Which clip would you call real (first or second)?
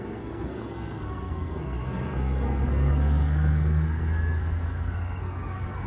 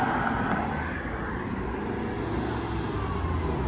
second